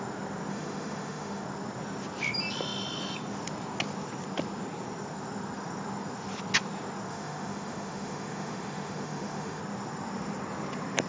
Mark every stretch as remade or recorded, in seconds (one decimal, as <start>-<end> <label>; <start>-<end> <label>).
0.0-0.5 recorded; 0.5-1.4 remade; 1.4-7.1 recorded; 7.1-9.6 remade; 9.6-11.1 recorded